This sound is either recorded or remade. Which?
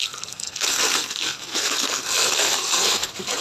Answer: remade